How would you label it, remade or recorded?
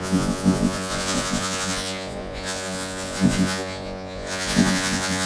remade